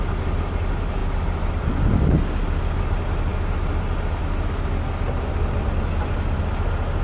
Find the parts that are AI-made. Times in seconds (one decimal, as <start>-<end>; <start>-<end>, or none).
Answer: none